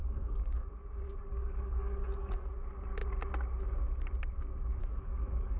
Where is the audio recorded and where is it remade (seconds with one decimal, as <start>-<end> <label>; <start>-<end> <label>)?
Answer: 0.0-0.7 remade; 0.7-1.3 recorded; 1.3-2.5 remade; 2.5-4.8 recorded; 4.8-5.6 remade

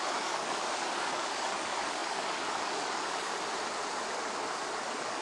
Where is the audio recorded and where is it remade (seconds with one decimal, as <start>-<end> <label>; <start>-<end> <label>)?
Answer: 0.0-3.3 remade; 3.3-4.8 recorded; 4.8-5.2 remade

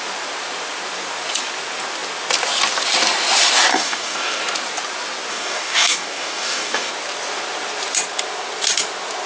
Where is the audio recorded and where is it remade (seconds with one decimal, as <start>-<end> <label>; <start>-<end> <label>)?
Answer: 0.0-3.7 recorded; 3.7-4.4 remade; 4.4-5.3 recorded; 5.3-6.9 remade; 6.9-9.3 recorded

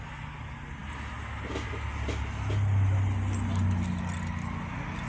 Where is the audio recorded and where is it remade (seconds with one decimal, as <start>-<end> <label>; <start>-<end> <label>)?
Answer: 0.0-5.1 recorded

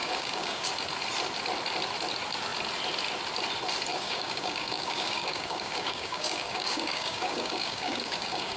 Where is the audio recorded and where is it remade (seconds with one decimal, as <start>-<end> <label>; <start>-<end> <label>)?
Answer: 0.0-0.7 remade; 0.7-3.9 recorded; 3.9-8.6 remade